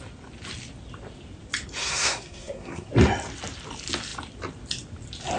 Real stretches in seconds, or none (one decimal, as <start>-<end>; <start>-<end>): 0.0-1.8; 2.9-5.4